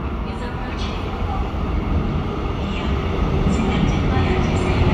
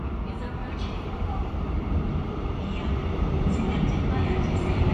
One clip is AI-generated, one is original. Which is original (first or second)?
first